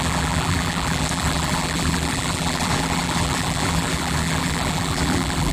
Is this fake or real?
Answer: fake